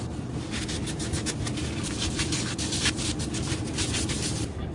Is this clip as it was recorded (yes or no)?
yes